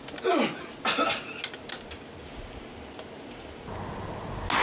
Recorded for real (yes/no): yes